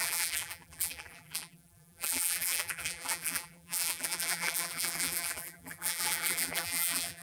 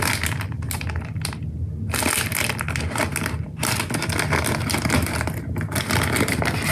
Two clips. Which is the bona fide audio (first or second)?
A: second